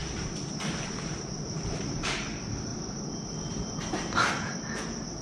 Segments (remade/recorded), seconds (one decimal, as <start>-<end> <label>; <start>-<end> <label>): 0.0-2.7 recorded; 2.7-4.3 remade; 4.3-5.2 recorded